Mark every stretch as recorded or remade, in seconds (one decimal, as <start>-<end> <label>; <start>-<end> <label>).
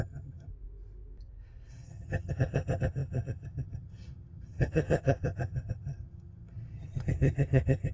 0.0-0.5 remade; 0.5-1.7 recorded; 1.7-7.9 remade